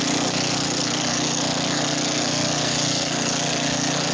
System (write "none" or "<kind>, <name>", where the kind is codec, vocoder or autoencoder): codec, SNAC